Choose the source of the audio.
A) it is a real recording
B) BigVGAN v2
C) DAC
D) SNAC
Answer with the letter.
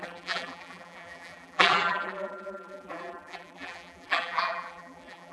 B